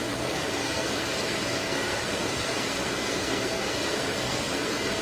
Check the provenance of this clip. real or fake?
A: fake